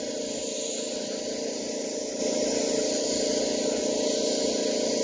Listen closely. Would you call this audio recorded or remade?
recorded